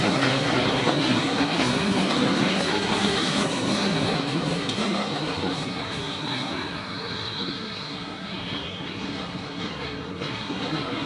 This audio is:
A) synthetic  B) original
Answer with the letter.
A